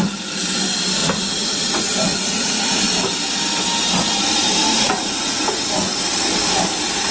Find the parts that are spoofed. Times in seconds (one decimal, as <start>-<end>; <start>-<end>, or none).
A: 1.0-1.6; 2.1-2.8; 4.7-6.0